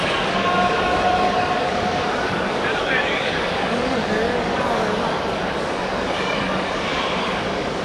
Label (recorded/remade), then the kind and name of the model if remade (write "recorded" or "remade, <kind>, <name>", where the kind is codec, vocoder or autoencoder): remade, codec, DAC